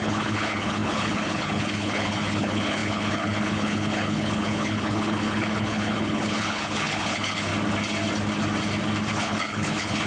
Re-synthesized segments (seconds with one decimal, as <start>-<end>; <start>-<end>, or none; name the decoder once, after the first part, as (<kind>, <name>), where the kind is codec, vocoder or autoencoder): 0.0-7.5 (codec, HILCodec); 9.1-10.1